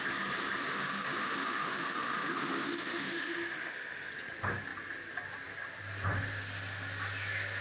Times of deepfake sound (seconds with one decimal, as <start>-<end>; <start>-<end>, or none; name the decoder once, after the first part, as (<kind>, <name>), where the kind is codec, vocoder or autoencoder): 0.6-4.1 (autoencoder, DAC-VAE)

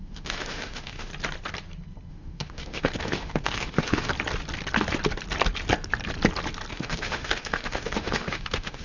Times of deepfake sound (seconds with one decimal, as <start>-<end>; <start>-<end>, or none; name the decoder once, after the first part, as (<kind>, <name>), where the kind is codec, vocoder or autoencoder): 0.0-1.1 (autoencoder, DAC-VAE); 2.1-4.1; 6.7-8.8

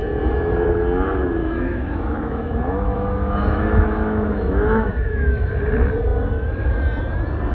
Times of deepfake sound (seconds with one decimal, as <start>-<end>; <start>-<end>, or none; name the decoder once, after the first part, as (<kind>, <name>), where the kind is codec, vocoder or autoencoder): 1.4-5.5 (autoencoder, DAC-VAE)

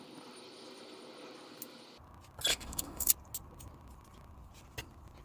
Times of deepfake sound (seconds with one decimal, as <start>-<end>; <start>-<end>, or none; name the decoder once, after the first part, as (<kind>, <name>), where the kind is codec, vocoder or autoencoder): 2.5-3.1 (autoencoder, DAC-VAE)

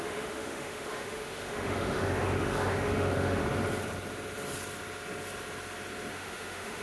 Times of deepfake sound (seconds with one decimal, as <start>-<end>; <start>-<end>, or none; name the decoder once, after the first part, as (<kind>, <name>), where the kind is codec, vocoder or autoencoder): 0.0-3.4 (autoencoder, DAC-VAE); 6.1-6.8